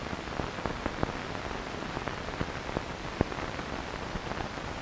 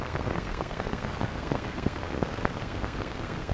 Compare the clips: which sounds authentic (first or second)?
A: first